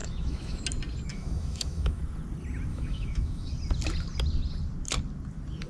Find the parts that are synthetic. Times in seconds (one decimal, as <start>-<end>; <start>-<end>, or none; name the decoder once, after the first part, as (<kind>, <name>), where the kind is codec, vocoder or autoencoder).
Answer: 0.0-0.6 (autoencoder, DAC-VAE); 1.1-2.0; 2.7-3.5